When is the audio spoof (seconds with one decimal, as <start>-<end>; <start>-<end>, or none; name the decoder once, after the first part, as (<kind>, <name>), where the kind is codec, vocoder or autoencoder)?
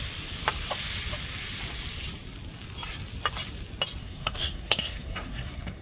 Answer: 4.0-5.8 (codec, SNAC)